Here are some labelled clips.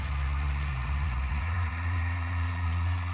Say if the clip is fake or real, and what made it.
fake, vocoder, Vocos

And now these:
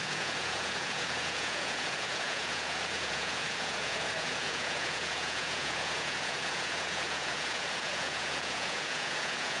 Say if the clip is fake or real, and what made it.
fake, vocoder, Vocos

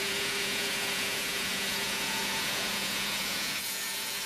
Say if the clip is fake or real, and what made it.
fake, vocoder, Vocos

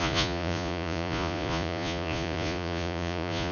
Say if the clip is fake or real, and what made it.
fake, vocoder, Vocos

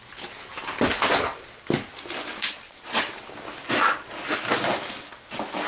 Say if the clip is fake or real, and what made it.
real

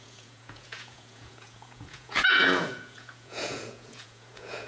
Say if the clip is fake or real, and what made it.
fake, vocoder, Vocos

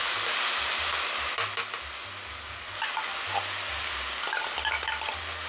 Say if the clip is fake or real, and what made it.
real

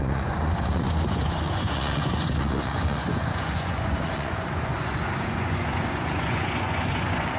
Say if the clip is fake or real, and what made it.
fake, vocoder, Vocos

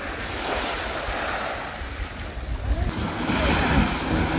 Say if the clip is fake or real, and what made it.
real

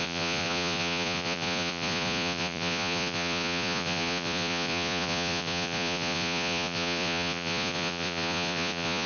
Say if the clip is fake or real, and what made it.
fake, vocoder, Vocos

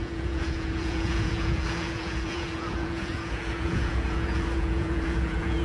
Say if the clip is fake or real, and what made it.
fake, vocoder, Vocos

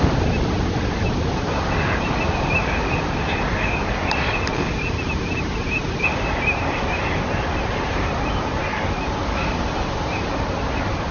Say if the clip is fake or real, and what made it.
real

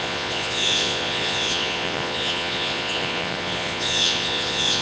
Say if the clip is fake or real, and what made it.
fake, vocoder, Vocos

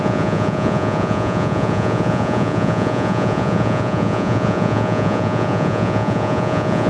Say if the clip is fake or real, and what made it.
fake, vocoder, Vocos